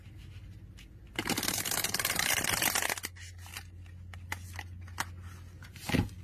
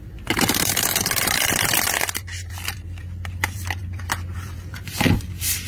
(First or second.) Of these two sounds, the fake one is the second